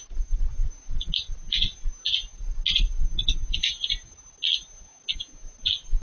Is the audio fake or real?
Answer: real